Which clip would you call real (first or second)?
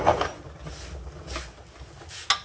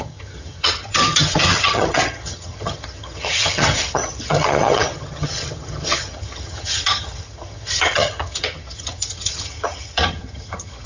first